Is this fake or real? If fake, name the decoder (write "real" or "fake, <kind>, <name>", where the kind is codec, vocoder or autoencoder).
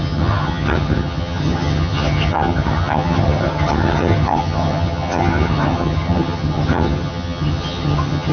fake, vocoder, HiFi-GAN